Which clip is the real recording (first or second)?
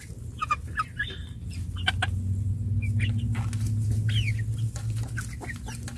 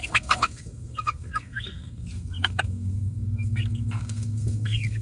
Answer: first